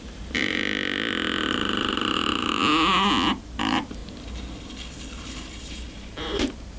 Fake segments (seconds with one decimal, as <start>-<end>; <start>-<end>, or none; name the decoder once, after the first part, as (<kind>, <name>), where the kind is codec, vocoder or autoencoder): 0.0-0.6 (vocoder, BigVGAN v2); 1.5-2.6; 3.6-4.0; 5.2-6.8